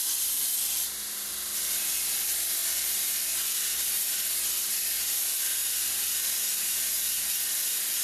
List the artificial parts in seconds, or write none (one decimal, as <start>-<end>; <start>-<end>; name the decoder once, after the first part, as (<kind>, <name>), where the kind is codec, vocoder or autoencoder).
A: 2.6-3.3 (vocoder, BigVGAN v2); 5.6-7.6